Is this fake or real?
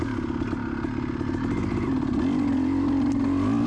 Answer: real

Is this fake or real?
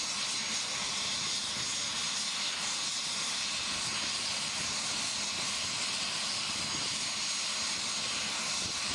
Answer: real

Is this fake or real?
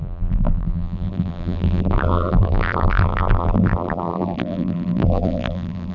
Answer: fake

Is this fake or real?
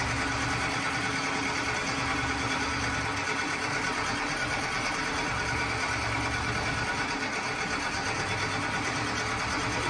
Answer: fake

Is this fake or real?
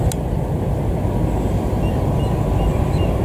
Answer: real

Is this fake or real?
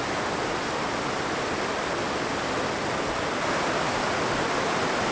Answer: real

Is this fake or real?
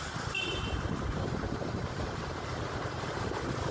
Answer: fake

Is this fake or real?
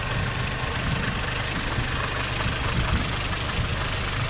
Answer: real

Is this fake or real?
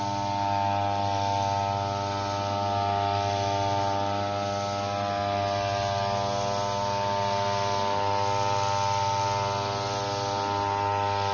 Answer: real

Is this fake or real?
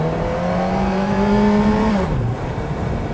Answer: fake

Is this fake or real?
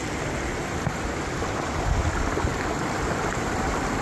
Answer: real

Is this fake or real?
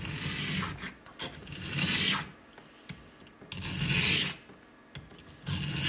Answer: real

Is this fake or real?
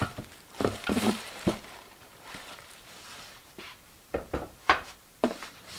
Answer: fake